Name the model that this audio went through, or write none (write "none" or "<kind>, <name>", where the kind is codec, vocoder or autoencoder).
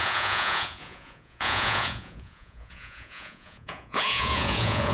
vocoder, Vocos